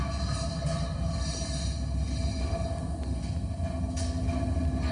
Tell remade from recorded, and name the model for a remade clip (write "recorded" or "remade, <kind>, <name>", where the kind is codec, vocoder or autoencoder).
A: recorded